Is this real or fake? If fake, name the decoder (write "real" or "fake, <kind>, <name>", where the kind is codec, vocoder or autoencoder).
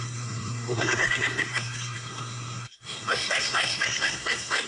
fake, codec, SNAC